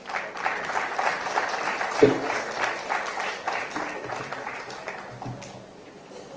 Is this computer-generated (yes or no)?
no